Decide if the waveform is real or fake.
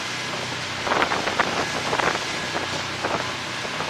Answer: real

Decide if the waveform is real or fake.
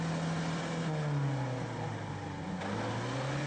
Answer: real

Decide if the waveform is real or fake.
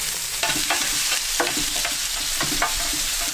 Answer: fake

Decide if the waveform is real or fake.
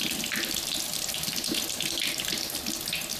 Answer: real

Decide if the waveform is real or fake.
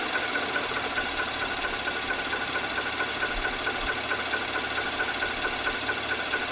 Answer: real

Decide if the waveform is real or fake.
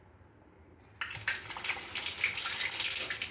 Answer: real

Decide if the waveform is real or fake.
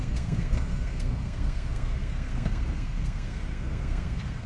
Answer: fake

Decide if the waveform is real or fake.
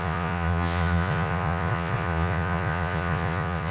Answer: fake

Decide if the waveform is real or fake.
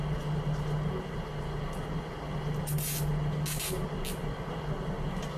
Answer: real